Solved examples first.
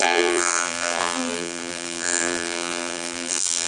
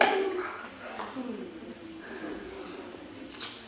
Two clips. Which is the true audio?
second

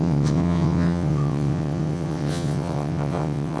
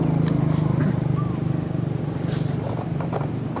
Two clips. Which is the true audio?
second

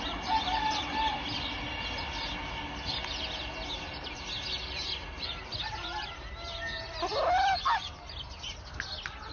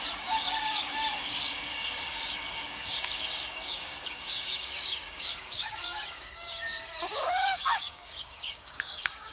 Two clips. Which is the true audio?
first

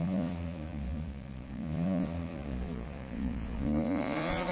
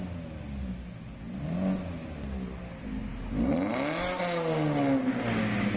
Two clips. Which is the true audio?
second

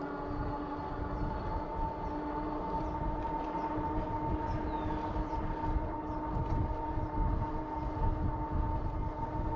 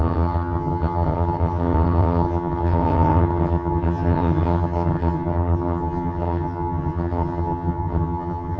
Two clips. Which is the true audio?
first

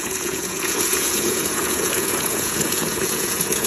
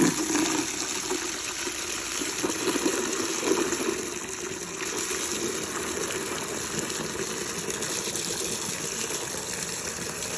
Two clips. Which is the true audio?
second